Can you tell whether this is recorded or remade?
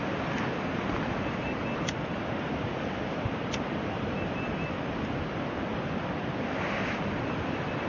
recorded